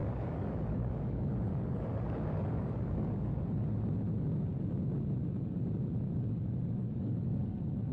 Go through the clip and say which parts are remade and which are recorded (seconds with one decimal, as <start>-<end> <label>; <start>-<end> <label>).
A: 0.0-3.4 remade; 3.4-6.8 recorded; 6.8-7.4 remade; 7.4-7.9 recorded